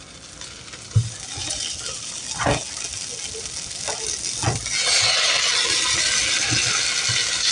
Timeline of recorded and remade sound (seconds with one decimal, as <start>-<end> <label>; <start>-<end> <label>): 0.0-2.6 remade; 2.6-7.1 recorded; 7.1-7.5 remade